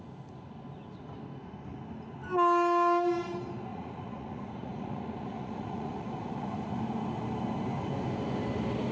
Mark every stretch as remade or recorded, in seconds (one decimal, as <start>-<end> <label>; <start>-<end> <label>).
0.0-3.7 recorded; 3.7-6.8 remade; 6.8-8.9 recorded